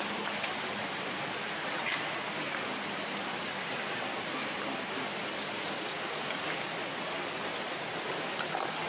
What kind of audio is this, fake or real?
fake